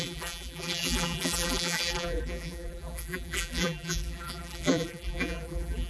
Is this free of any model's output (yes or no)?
no